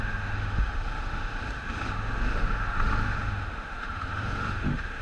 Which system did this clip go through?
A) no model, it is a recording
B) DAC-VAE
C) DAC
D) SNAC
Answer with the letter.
B